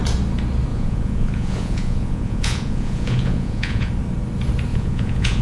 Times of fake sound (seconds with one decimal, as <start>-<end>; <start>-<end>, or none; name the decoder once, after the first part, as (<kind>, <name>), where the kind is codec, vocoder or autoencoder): 0.7-3.9 (vocoder, Vocos); 4.7-5.4